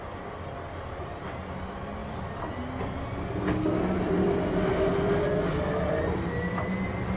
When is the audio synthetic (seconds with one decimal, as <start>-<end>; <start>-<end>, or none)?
none